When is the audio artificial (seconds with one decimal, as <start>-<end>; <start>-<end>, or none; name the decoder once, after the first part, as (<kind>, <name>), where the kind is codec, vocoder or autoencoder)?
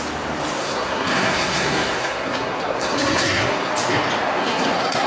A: 0.6-3.7 (codec, SNAC); 4.4-5.1